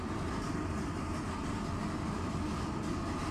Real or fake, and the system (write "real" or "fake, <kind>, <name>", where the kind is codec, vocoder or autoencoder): real